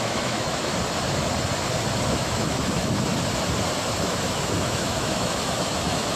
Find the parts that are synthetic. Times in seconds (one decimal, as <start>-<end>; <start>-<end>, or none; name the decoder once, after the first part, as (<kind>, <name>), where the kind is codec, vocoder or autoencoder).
0.0-0.7 (autoencoder, DAC-VAE); 2.1-3.1; 4.0-6.2